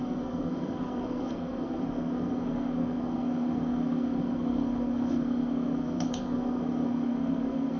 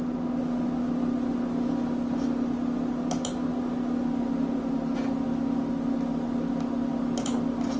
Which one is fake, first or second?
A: first